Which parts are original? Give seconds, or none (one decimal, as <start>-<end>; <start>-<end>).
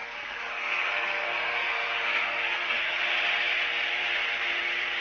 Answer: 3.0-5.0